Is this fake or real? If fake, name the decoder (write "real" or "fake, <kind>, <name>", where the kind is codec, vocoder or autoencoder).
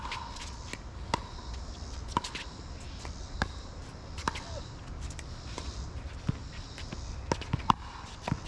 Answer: real